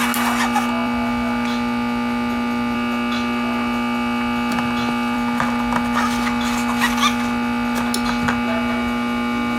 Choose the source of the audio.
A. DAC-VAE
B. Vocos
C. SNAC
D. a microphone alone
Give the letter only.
D